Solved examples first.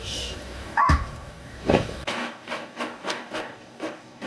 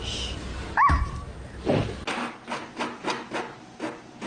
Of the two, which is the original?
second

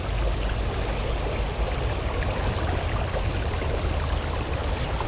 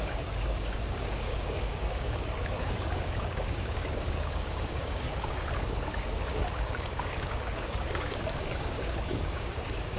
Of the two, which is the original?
first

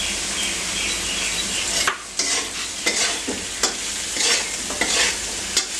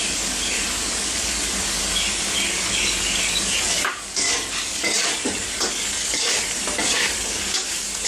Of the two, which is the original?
first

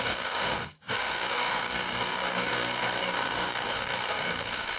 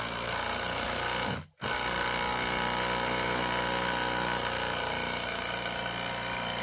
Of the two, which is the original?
second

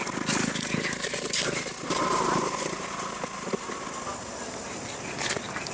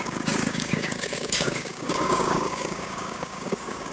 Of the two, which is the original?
first